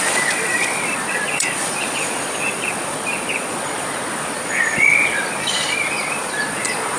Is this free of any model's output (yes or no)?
no